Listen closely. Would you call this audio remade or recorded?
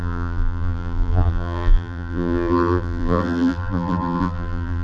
remade